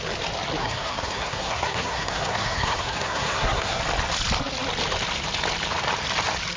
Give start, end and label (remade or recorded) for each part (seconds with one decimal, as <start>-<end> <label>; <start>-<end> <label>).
0.0-0.6 recorded; 0.6-3.8 remade; 3.8-6.6 recorded